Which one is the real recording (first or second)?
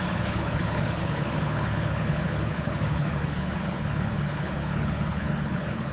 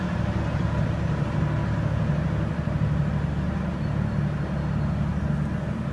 second